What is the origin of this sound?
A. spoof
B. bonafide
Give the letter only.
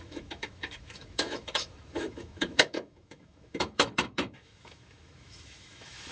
A